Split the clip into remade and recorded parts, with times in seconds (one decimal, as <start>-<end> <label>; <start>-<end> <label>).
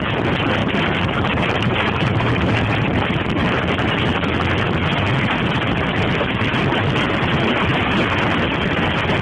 0.0-0.6 recorded; 0.6-3.9 remade; 3.9-9.2 recorded